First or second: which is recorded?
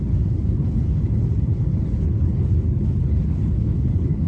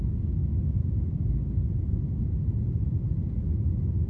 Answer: second